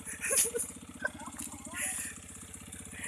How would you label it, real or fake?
real